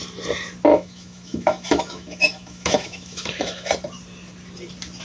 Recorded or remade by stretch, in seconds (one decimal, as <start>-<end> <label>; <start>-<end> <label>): 0.0-0.7 recorded; 0.7-3.7 remade; 3.7-5.0 recorded